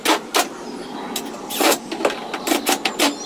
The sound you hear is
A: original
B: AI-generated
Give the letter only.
A